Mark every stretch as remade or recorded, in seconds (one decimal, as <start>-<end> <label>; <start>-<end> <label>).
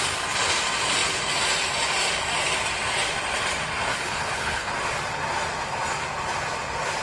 0.0-3.9 recorded; 3.9-4.7 remade; 4.7-7.0 recorded